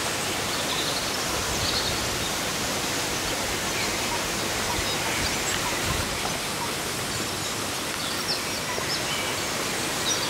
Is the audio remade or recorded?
recorded